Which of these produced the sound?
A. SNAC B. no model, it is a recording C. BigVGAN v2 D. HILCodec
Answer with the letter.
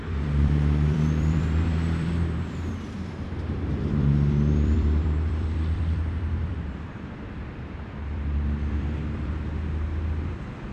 C